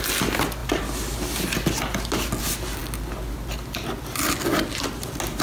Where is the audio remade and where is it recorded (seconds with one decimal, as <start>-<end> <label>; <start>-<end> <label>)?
0.0-5.4 recorded